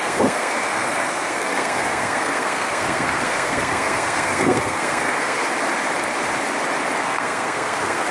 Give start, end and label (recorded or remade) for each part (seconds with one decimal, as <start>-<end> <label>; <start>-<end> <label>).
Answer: 0.0-5.5 remade; 5.5-7.0 recorded; 7.0-8.1 remade